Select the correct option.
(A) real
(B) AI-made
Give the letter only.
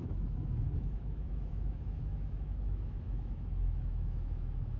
B